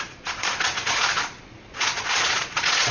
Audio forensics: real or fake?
fake